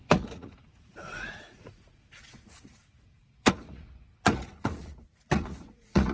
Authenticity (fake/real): fake